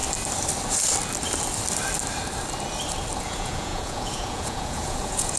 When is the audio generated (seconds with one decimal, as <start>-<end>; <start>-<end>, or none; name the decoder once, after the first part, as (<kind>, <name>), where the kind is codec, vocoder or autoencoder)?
3.2-5.4 (vocoder, Vocos)